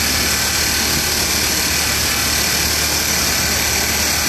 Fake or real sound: real